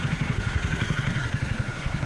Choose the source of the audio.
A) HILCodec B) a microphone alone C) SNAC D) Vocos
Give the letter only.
C